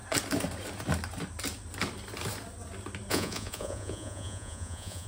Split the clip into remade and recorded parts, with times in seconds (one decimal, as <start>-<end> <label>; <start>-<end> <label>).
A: 0.0-3.1 recorded; 3.1-5.1 remade